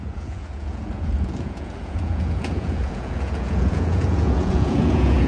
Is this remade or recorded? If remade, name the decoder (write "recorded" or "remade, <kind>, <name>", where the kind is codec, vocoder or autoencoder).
remade, vocoder, Vocos